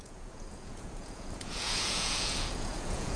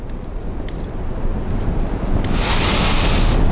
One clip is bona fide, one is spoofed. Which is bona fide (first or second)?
second